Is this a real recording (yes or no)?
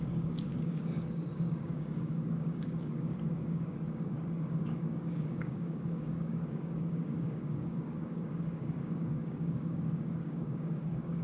no